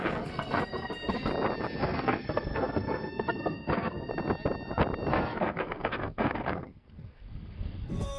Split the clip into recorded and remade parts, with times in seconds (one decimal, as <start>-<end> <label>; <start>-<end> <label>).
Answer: 0.0-1.3 remade; 1.3-1.8 recorded; 1.8-4.1 remade; 4.1-5.1 recorded; 5.1-8.2 remade